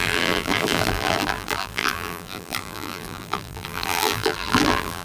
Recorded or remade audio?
remade